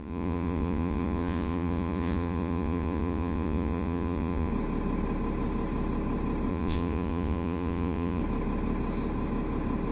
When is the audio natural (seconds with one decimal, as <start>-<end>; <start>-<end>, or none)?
4.5-6.5; 8.2-9.9